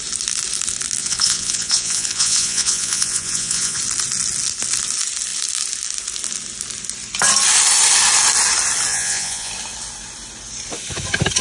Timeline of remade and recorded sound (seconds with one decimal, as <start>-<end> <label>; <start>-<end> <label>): 0.0-1.0 recorded; 1.0-3.8 remade; 3.8-8.9 recorded; 8.9-9.5 remade; 9.5-11.4 recorded